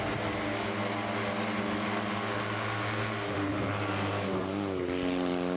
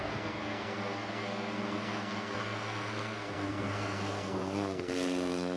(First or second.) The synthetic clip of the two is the second